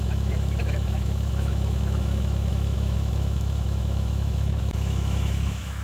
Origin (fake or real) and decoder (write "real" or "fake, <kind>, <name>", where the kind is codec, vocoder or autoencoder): fake, autoencoder, DAC-VAE